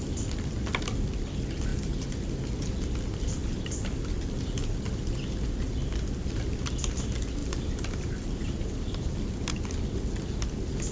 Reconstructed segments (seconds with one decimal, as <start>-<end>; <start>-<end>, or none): 1.7-2.3; 7.4-9.1